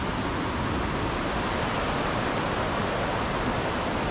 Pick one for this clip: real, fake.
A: real